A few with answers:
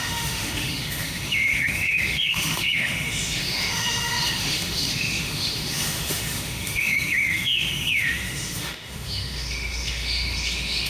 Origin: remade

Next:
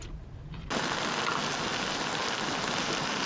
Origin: recorded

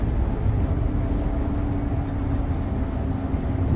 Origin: recorded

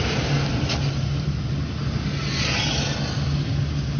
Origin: recorded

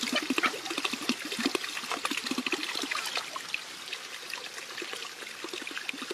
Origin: recorded